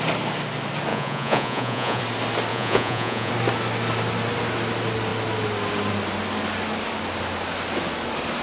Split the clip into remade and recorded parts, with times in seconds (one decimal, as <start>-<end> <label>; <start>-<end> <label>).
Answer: 0.0-0.9 recorded; 0.9-2.0 remade; 2.0-2.5 recorded; 2.5-3.3 remade; 3.3-8.4 recorded